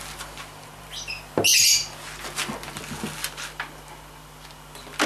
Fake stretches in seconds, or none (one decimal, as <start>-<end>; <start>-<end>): none